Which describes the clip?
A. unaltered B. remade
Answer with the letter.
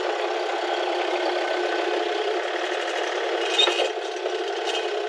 A